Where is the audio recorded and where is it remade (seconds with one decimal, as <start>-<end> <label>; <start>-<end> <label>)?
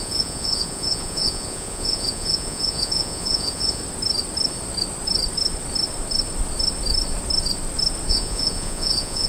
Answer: 0.0-3.8 remade; 3.8-8.1 recorded; 8.1-9.3 remade